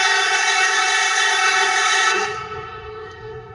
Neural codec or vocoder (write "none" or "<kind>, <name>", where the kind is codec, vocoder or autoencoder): codec, SNAC